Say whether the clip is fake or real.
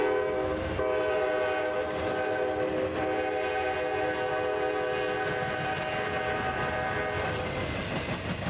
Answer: real